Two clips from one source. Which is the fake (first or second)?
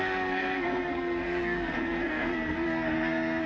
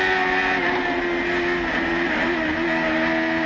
first